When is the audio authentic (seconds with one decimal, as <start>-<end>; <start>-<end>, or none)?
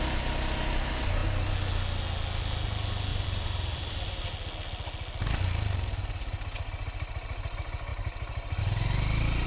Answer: 0.0-3.1; 4.3-7.9; 8.6-9.5